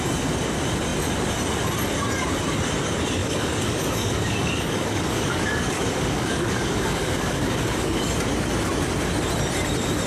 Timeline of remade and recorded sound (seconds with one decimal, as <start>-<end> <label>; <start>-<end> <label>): 0.0-3.2 recorded; 3.2-8.1 remade; 8.1-10.1 recorded